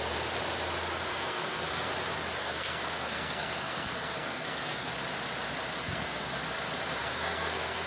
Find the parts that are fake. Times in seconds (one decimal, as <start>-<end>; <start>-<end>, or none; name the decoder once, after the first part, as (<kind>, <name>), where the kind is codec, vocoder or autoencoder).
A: 1.1-1.9 (codec, SNAC); 2.4-4.9; 5.8-6.4; 7.0-7.9